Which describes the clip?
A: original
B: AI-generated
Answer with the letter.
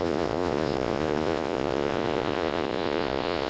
B